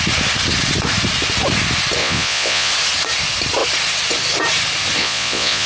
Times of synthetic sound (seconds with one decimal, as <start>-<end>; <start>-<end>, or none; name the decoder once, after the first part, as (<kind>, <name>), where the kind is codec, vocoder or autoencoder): 2.0-2.7 (vocoder, Vocos); 5.0-5.7